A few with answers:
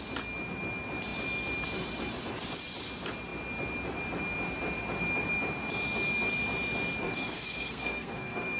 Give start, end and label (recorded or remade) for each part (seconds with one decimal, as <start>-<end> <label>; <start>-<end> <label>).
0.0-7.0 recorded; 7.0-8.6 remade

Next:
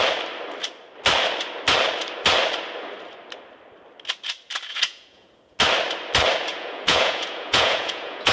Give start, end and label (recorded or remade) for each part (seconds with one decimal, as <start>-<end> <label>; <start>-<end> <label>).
0.0-4.7 recorded; 4.7-5.6 remade; 5.6-6.5 recorded; 6.5-8.3 remade

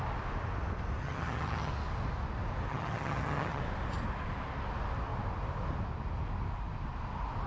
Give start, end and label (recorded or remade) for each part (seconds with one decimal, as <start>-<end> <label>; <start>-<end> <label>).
0.0-1.0 recorded; 1.0-1.7 remade; 1.7-2.7 recorded; 2.7-3.6 remade; 3.6-7.5 recorded

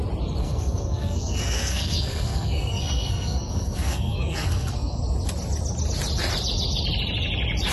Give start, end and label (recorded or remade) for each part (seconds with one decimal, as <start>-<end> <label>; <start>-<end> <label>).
0.0-0.4 recorded; 0.4-5.0 remade; 5.0-7.7 recorded